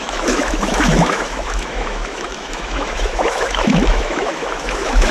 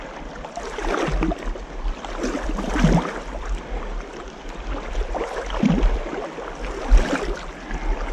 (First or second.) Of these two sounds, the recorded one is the second